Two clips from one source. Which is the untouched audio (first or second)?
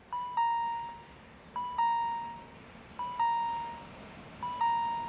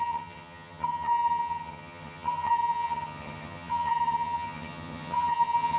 first